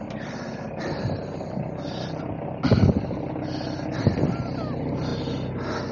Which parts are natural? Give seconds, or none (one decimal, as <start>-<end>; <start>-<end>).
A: 0.0-5.9